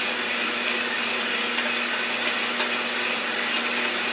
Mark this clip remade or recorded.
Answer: recorded